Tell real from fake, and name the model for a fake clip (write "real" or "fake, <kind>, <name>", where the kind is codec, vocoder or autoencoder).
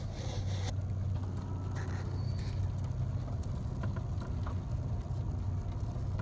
real